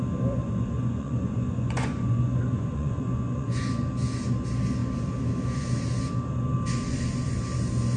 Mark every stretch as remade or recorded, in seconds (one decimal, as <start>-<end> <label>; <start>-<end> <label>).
0.0-0.4 recorded; 0.4-3.6 remade; 3.6-8.0 recorded